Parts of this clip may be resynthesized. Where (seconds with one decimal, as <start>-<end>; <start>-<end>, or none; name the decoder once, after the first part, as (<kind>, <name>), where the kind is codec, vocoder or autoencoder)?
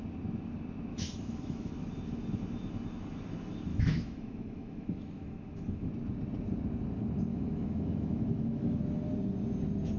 0.9-1.7 (autoencoder, DAC-VAE); 3.7-5.9; 7.3-8.8